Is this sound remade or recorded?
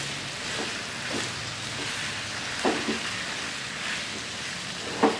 recorded